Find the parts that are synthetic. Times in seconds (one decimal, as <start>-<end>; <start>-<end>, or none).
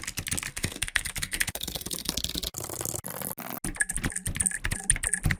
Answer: 0.5-2.1